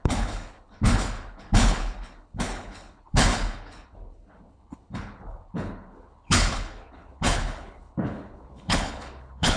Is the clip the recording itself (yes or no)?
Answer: no